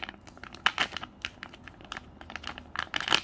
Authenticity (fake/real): real